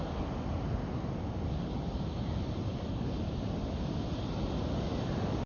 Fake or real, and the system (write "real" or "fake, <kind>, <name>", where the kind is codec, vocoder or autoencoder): real